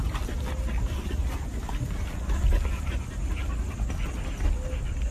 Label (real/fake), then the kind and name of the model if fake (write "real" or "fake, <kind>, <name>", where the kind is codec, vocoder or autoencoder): real